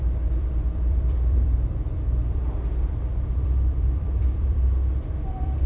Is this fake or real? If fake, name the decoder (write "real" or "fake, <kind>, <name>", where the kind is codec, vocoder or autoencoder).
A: fake, vocoder, BigVGAN v2